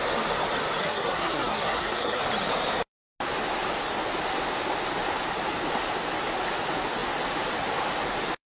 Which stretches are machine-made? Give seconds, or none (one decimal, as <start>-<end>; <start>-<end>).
0.8-2.2